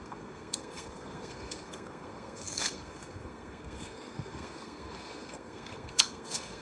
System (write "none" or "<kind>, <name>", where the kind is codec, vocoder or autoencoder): codec, SNAC